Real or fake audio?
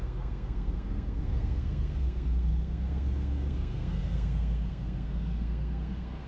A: fake